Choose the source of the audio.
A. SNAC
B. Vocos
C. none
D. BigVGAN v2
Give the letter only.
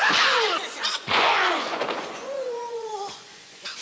B